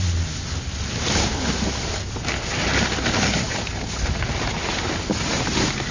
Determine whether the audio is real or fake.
real